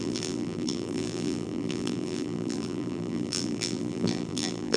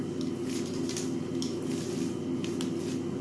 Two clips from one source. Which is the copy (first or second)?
first